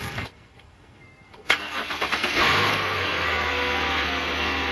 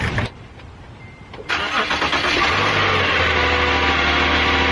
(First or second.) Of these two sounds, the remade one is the first